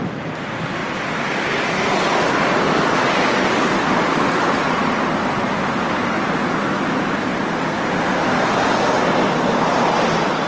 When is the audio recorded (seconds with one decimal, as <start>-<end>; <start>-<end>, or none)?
0.0-0.8; 1.3-7.3; 9.0-10.5